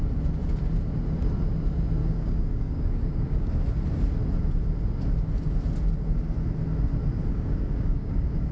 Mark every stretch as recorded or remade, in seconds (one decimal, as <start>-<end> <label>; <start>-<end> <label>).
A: 0.0-2.0 recorded; 2.0-3.5 remade; 3.5-7.3 recorded; 7.3-8.5 remade

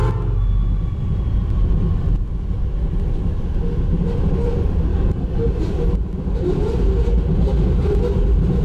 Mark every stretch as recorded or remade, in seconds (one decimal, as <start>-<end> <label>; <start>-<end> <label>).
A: 0.0-4.9 recorded; 4.9-5.6 remade; 5.6-8.6 recorded

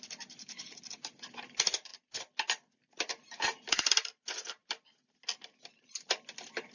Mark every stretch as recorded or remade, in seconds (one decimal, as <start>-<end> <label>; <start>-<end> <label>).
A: 0.0-6.7 recorded